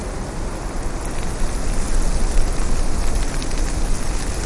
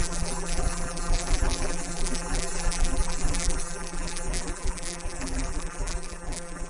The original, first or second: first